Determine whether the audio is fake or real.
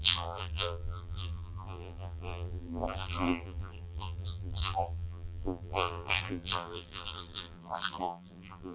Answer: fake